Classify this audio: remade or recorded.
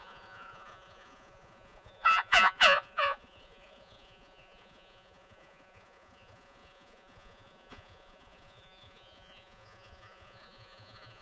remade